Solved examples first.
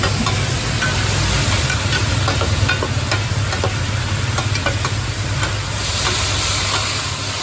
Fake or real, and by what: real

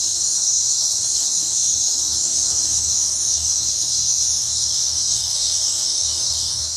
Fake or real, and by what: fake, codec, DAC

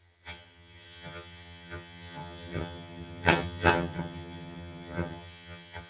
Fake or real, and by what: fake, vocoder, HiFi-GAN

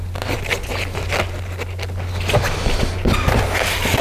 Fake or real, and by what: real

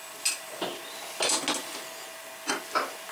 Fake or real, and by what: real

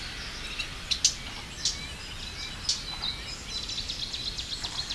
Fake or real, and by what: real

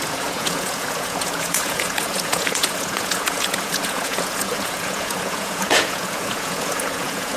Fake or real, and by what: fake, vocoder, Vocos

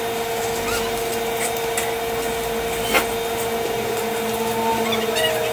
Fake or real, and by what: real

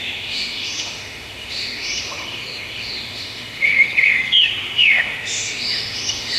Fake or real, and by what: fake, autoencoder, DAC-VAE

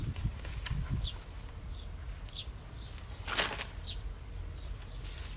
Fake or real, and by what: real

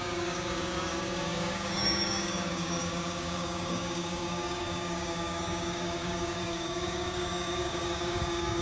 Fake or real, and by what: fake, codec, DAC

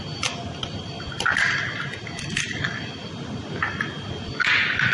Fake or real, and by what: real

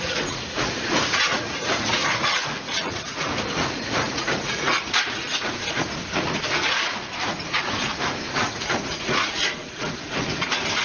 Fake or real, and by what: fake, vocoder, Vocos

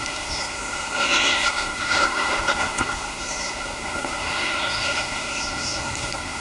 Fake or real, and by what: fake, codec, SNAC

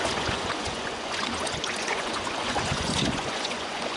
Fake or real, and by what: fake, vocoder, Vocos